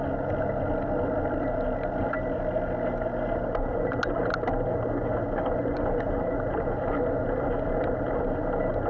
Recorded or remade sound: recorded